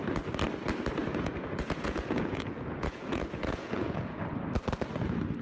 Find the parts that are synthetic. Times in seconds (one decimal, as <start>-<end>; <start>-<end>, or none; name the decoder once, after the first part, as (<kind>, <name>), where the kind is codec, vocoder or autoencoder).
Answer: 1.0-4.2 (vocoder, Vocos)